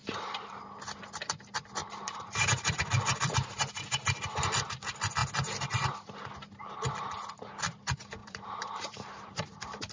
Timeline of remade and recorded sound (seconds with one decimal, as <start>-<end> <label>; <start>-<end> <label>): 0.0-0.6 remade; 0.6-1.8 recorded; 1.8-2.8 remade; 2.8-8.2 recorded; 8.2-9.9 remade